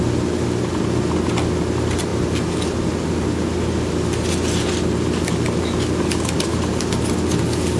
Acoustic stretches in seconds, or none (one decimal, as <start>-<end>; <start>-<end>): 0.0-7.8